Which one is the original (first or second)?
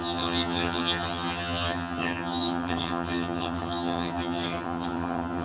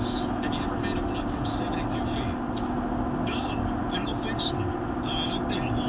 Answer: second